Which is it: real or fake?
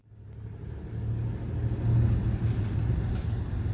real